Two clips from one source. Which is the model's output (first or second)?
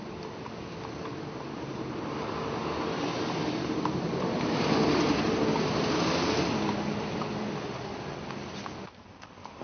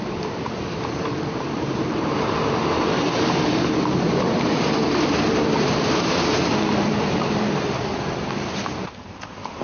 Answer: second